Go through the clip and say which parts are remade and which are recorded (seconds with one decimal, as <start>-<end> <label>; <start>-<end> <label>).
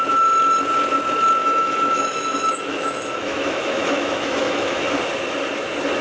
0.0-1.4 recorded; 1.4-5.0 remade; 5.0-6.0 recorded